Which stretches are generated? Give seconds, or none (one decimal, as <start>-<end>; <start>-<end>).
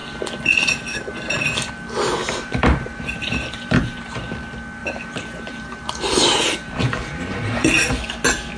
0.0-1.7; 2.2-4.3; 4.8-8.0